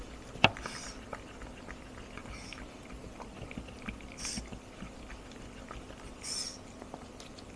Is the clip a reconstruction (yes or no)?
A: no